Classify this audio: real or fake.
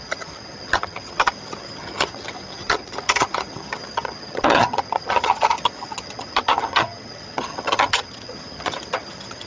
fake